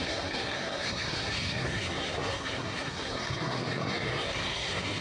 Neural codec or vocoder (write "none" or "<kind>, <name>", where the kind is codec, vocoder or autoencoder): codec, SNAC